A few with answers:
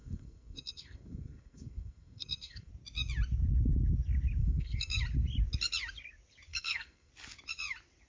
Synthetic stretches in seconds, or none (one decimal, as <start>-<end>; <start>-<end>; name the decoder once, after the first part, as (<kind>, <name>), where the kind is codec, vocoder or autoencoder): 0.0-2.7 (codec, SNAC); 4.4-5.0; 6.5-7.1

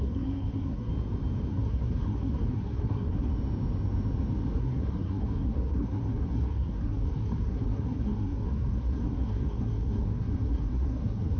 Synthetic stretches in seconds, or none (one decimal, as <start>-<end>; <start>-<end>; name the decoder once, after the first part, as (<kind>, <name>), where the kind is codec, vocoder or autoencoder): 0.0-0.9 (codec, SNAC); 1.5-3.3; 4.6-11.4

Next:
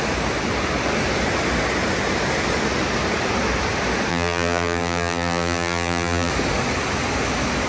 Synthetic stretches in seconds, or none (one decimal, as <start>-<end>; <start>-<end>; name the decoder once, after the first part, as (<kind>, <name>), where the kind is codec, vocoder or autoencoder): 4.1-6.3 (vocoder, BigVGAN v2)

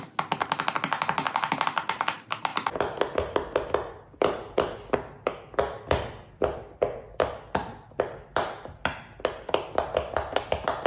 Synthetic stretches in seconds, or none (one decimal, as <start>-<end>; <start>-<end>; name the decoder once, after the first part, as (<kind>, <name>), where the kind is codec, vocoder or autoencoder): none

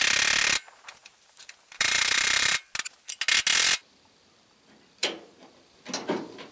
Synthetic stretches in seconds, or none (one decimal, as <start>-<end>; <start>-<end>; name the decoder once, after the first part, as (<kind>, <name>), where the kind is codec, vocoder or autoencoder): 1.0-2.6 (vocoder, BigVGAN v2); 5.0-5.5